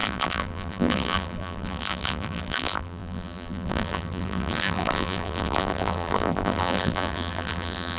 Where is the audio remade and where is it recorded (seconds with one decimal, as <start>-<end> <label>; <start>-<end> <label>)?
0.0-8.0 remade